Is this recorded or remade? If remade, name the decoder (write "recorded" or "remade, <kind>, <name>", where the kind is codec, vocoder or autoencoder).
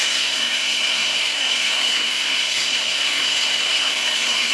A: remade, codec, SNAC